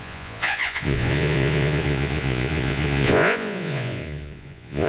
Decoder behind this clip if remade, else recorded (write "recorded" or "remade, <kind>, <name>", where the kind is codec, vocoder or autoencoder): remade, vocoder, Vocos